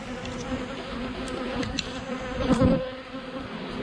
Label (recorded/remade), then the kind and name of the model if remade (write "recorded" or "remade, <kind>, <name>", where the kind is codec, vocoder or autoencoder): recorded